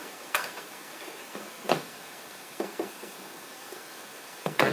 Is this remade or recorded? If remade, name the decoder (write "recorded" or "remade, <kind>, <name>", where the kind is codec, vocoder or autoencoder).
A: remade, codec, SNAC